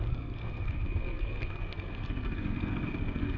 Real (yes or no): no